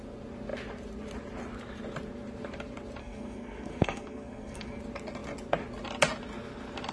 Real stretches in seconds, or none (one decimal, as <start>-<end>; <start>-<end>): 0.0-3.0; 4.8-6.9